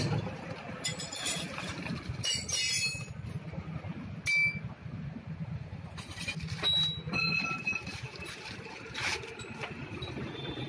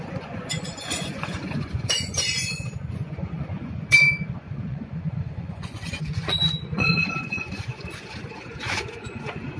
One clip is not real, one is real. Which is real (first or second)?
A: first